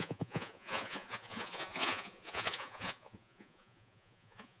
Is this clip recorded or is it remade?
remade